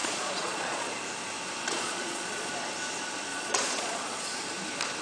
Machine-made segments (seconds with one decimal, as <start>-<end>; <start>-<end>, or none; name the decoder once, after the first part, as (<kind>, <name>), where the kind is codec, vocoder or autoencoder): 0.0-0.9 (vocoder, Vocos); 1.7-2.5; 3.3-4.4

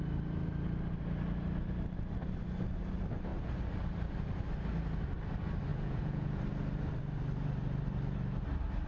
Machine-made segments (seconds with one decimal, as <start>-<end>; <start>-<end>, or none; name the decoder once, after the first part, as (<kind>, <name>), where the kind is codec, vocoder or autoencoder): 5.7-6.4 (vocoder, Vocos)